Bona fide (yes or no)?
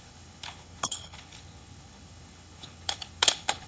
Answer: no